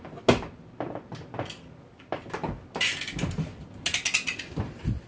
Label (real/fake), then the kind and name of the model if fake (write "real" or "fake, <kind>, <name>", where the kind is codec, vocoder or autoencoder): real